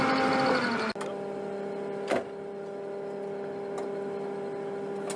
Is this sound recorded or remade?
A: recorded